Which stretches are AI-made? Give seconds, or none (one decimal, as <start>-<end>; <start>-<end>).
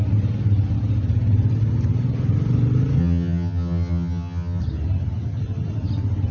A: 3.0-4.6